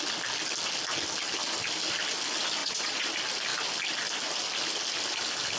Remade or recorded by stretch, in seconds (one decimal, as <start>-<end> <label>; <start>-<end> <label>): 0.0-2.6 recorded; 2.6-3.1 remade; 3.1-5.6 recorded